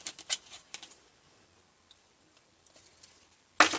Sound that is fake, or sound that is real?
real